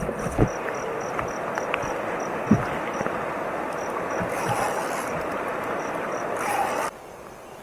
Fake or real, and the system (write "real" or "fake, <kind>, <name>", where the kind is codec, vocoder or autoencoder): real